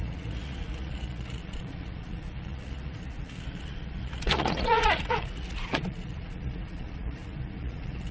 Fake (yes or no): yes